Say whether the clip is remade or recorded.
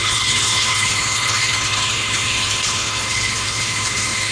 remade